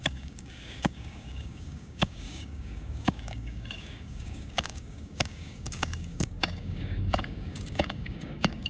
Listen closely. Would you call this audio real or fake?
fake